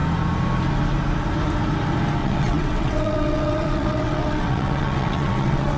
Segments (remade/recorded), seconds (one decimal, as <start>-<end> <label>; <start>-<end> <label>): 0.0-2.2 recorded; 2.2-5.8 remade